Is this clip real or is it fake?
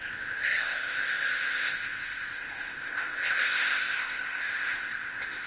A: fake